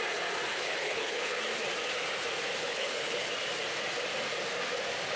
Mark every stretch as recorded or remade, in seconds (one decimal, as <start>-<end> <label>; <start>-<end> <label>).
0.0-0.5 recorded; 0.5-1.4 remade; 1.4-2.6 recorded; 2.6-3.3 remade; 3.3-5.2 recorded